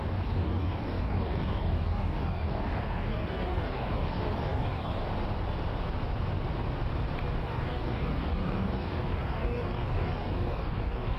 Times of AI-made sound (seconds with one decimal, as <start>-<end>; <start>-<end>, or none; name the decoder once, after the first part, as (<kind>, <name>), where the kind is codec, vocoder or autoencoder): 0.0-5.0 (codec, DAC); 7.4-11.2